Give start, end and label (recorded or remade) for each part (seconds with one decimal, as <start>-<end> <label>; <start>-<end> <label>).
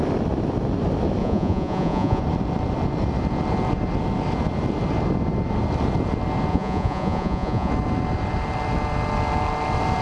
0.0-1.2 recorded; 1.2-2.2 remade; 2.2-6.5 recorded; 6.5-7.7 remade; 7.7-10.0 recorded